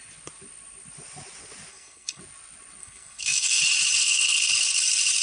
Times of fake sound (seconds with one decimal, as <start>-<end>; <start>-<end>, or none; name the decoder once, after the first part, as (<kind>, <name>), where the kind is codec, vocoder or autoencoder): 1.7-2.2 (codec, SNAC); 2.8-3.6; 4.0-4.5